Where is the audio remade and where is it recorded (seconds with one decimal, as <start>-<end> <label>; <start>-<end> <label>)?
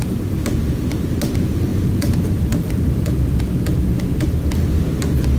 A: 0.0-1.7 recorded; 1.7-2.4 remade; 2.4-5.4 recorded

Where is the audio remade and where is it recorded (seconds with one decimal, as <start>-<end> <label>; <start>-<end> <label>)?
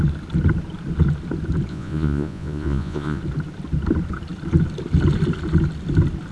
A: 0.0-1.7 recorded; 1.7-3.2 remade; 3.2-6.3 recorded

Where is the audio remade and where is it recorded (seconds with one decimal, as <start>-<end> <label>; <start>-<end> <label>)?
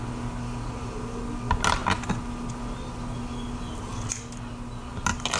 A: 0.0-5.4 recorded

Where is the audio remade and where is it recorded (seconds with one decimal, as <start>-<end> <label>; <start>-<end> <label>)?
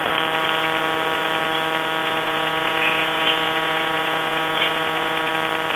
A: 0.0-2.0 recorded; 2.0-5.3 remade; 5.3-5.8 recorded